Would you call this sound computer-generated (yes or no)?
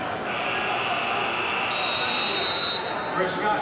no